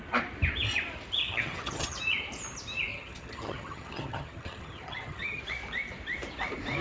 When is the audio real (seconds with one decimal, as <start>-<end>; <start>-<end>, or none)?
0.0-1.2; 2.0-2.9; 5.4-6.8